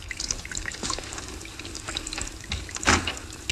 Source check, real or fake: fake